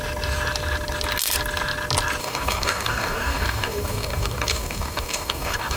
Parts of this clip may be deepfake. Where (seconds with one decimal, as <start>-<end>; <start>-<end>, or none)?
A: 2.2-5.8